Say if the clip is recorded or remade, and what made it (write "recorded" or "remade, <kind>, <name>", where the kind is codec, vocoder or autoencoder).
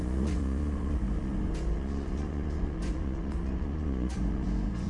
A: remade, vocoder, Vocos